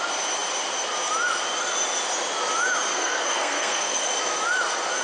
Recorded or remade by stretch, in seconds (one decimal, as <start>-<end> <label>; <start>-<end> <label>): 0.0-2.9 recorded; 2.9-4.1 remade; 4.1-5.0 recorded